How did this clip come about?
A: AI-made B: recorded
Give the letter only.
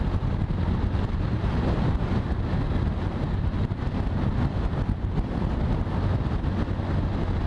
B